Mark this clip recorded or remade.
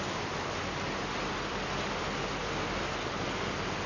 recorded